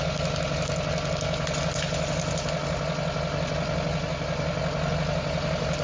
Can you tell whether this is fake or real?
real